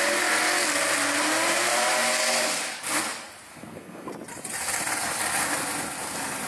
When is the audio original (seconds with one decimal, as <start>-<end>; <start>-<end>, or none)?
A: 0.0-3.5; 4.1-6.5